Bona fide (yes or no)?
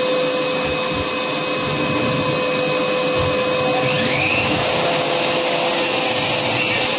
yes